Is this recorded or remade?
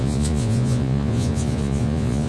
remade